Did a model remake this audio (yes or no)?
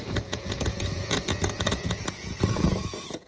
yes